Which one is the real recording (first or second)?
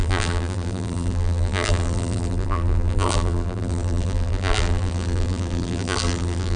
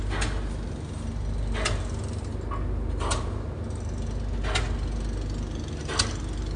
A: second